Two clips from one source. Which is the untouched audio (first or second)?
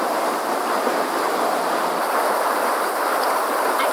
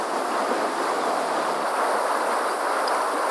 second